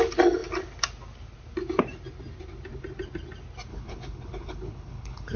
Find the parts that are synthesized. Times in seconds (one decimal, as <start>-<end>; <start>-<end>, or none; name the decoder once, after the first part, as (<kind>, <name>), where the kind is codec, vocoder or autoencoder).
3.7-5.4 (codec, HILCodec)